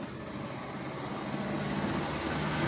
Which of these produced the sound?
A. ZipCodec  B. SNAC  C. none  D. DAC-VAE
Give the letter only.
C